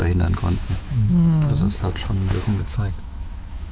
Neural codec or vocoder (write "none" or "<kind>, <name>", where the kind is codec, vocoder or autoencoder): autoencoder, DAC-VAE